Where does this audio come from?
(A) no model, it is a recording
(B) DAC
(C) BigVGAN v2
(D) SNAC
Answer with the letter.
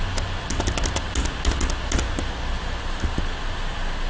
A